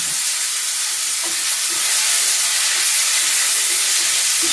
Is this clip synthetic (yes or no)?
no